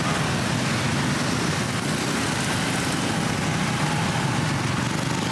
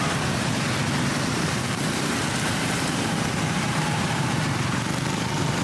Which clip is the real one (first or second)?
first